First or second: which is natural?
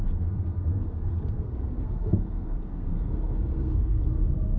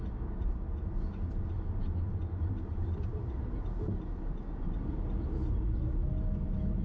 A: second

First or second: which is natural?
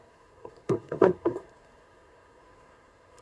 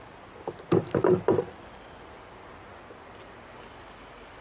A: second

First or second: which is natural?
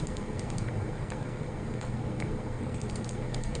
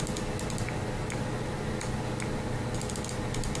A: second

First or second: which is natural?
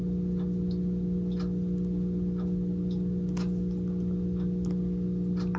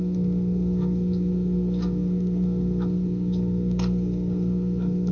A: first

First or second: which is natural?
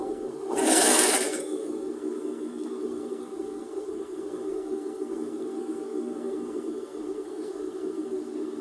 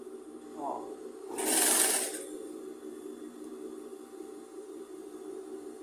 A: second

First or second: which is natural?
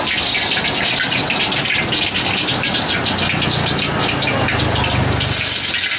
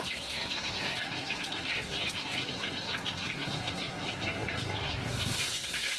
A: first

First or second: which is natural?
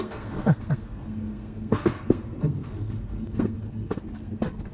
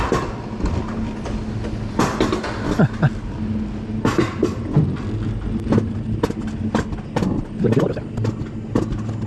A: second